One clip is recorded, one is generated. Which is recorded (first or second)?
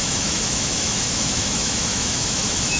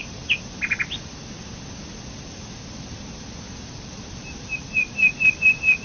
second